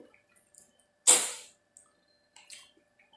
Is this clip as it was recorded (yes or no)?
yes